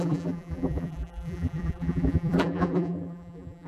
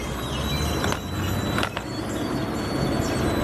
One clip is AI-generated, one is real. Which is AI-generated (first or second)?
first